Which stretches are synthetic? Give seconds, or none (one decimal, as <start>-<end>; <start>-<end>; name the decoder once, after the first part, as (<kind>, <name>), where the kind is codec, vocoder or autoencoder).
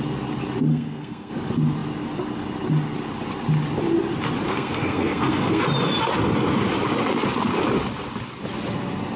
0.7-1.3 (codec, SNAC); 4.5-5.6